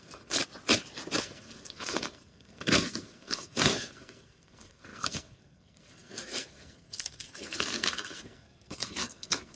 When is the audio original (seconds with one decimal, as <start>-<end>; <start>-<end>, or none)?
0.4-1.2